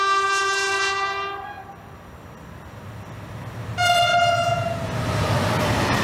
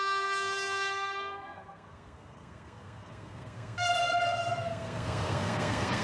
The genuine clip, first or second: first